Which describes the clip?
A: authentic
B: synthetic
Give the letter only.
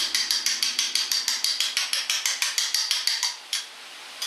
A